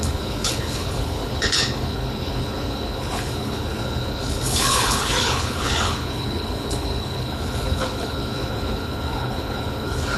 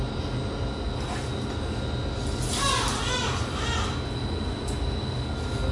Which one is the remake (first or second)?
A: first